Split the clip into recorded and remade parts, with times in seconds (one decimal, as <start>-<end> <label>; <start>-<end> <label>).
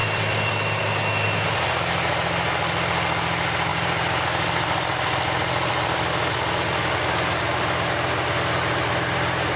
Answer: 0.0-0.8 remade; 0.8-3.7 recorded; 3.7-6.5 remade; 6.5-9.6 recorded